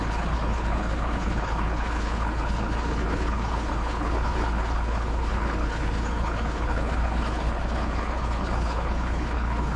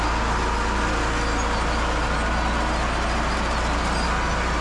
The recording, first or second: second